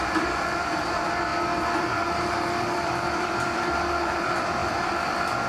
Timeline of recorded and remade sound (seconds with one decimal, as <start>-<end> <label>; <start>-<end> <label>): 0.0-1.3 remade; 1.3-1.8 recorded; 1.8-4.6 remade; 4.6-5.5 recorded